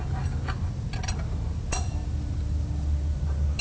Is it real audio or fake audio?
real